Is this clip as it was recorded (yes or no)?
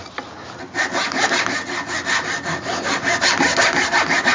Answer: yes